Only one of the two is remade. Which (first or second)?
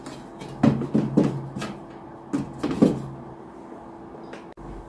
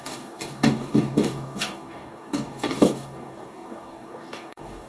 second